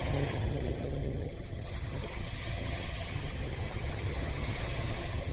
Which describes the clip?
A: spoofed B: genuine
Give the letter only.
A